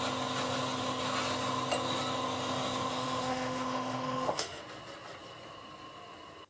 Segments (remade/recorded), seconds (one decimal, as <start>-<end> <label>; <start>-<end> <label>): 0.0-2.9 recorded; 2.9-4.6 remade; 4.6-6.5 recorded